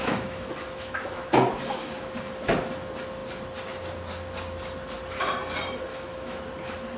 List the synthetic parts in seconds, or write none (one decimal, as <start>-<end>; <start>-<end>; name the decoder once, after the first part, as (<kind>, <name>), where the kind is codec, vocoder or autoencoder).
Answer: 0.0-1.3 (autoencoder, DAC-VAE); 5.9-6.4